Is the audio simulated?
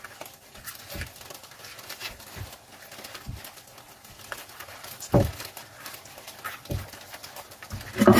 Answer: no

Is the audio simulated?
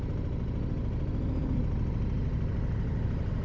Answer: no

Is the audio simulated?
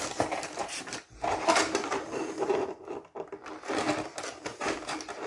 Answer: yes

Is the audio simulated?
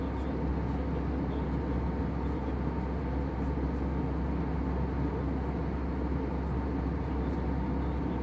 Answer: no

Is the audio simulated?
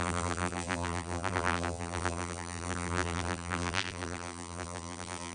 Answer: yes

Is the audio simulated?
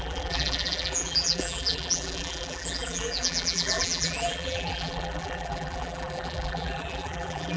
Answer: yes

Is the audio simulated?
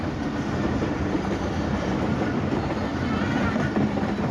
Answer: no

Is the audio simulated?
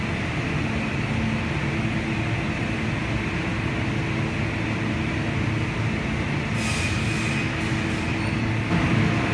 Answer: no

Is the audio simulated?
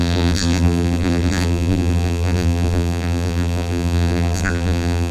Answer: yes